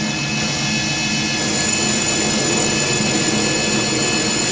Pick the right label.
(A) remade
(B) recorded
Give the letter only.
B